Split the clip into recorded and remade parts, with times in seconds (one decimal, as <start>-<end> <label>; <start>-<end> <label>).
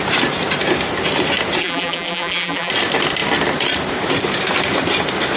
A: 0.0-1.6 recorded; 1.6-2.7 remade; 2.7-5.4 recorded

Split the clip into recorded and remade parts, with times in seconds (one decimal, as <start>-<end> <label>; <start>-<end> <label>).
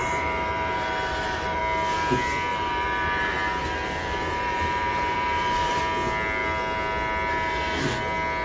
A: 0.0-1.6 remade; 1.6-2.5 recorded; 2.5-5.8 remade; 5.8-8.4 recorded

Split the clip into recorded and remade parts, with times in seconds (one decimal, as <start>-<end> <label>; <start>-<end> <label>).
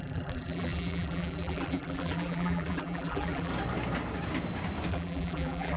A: 0.0-3.5 remade; 3.5-4.9 recorded; 4.9-5.8 remade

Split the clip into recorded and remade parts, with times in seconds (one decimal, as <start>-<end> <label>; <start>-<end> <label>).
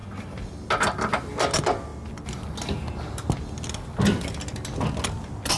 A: 0.0-5.6 recorded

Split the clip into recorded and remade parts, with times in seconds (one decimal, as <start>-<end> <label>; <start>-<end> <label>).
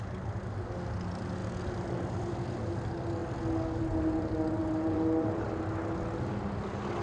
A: 0.0-4.6 recorded; 4.6-5.6 remade; 5.6-7.0 recorded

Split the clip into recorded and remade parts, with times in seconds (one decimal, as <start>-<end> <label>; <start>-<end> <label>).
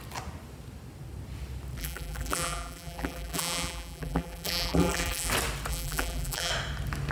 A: 0.0-1.8 recorded; 1.8-5.3 remade; 5.3-5.7 recorded; 5.7-6.5 remade; 6.5-7.1 recorded